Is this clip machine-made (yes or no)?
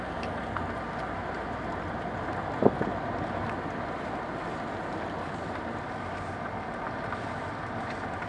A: no